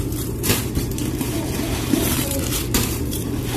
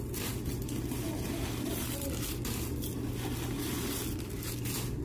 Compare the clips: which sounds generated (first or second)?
first